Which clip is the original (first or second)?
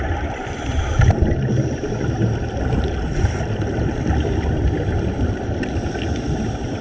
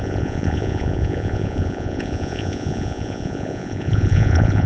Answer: first